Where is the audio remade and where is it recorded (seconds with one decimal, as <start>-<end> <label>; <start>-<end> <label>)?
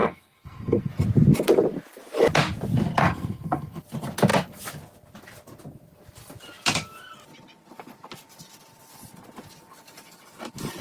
0.0-0.9 remade; 0.9-3.0 recorded; 3.0-3.8 remade; 3.8-10.8 recorded